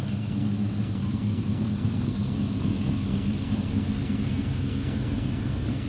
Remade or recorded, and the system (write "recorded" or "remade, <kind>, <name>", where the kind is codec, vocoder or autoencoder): remade, codec, SNAC